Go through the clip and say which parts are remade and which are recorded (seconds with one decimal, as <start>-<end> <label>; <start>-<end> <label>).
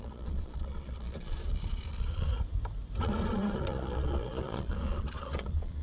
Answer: 0.0-2.3 remade; 2.3-3.0 recorded; 3.0-5.8 remade